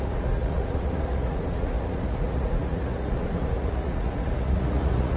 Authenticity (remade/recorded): remade